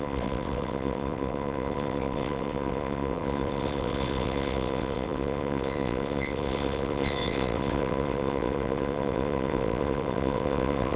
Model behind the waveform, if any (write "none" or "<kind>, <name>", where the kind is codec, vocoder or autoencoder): vocoder, WaveNeXt